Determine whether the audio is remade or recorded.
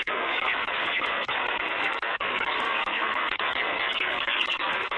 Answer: remade